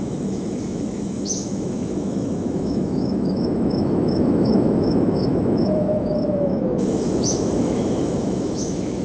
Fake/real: fake